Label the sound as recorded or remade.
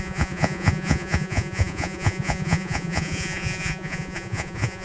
remade